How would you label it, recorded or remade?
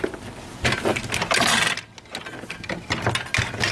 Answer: recorded